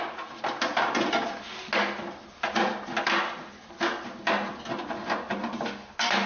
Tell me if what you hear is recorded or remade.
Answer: recorded